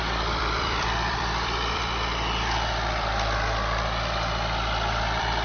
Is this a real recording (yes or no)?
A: no